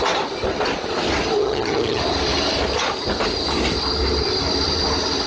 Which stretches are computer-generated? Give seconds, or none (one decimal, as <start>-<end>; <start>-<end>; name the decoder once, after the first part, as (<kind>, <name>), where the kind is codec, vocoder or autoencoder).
1.4-2.0 (vocoder, HiFi-GAN)